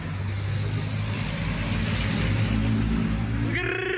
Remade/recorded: recorded